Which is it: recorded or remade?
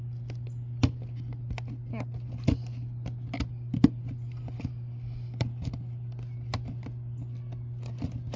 recorded